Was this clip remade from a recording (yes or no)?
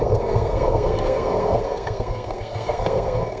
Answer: yes